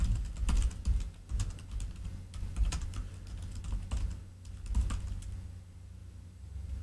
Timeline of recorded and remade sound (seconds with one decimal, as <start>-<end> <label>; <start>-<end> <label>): 0.0-2.5 recorded; 2.5-3.1 remade; 3.1-6.8 recorded